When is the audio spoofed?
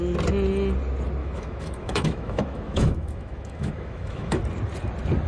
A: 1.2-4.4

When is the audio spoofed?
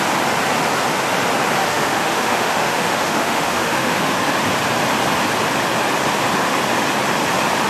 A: 1.6-4.1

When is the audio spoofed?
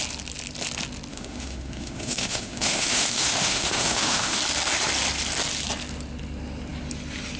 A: 1.1-4.4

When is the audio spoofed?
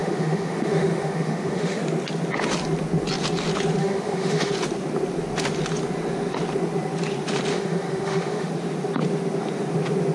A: 0.0-1.8; 3.8-4.5; 7.5-8.5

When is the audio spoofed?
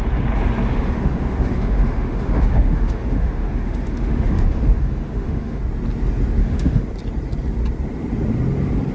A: 0.7-5.6; 6.4-6.9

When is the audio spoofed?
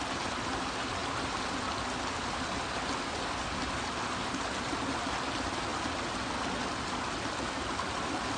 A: none